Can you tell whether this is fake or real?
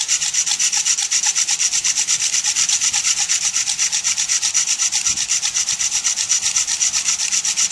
fake